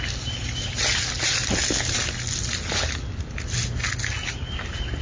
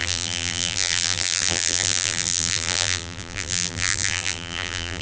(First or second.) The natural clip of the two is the first